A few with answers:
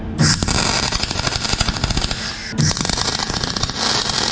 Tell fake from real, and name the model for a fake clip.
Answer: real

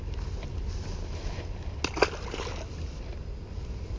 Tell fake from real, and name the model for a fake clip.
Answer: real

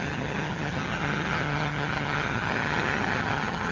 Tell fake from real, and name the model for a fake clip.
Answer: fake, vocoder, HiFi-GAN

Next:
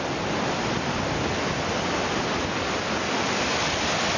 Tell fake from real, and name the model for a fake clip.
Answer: real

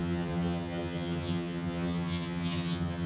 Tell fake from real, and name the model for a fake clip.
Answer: fake, vocoder, HiFi-GAN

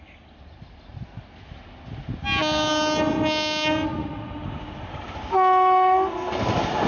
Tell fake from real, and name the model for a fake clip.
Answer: real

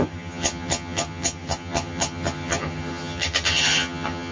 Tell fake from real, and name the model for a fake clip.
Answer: fake, vocoder, HiFi-GAN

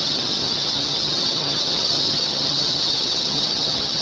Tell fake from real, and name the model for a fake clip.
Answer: fake, vocoder, HiFi-GAN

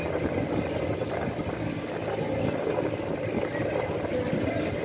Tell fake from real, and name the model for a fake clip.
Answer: real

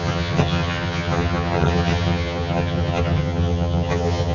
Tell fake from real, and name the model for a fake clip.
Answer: fake, vocoder, HiFi-GAN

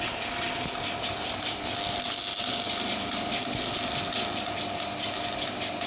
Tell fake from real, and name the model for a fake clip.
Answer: real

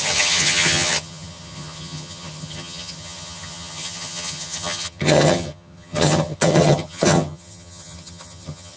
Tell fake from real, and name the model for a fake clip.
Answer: fake, vocoder, HiFi-GAN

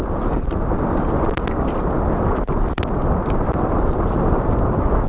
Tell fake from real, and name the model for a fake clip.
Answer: real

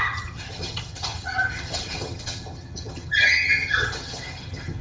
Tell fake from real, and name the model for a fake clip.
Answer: fake, vocoder, HiFi-GAN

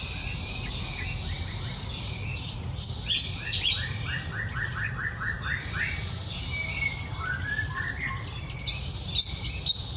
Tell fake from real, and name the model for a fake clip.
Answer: real